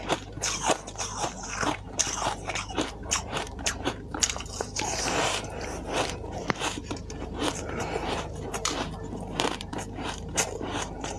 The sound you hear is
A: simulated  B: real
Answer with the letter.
A